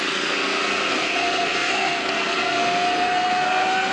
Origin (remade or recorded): remade